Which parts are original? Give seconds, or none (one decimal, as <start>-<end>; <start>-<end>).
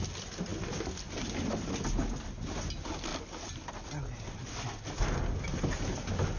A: 0.0-6.4